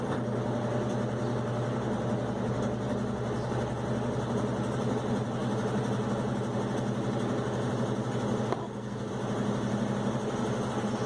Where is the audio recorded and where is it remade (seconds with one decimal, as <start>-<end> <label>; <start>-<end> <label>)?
0.0-8.6 recorded; 8.6-9.1 remade; 9.1-11.1 recorded